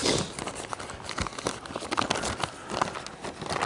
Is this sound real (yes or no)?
yes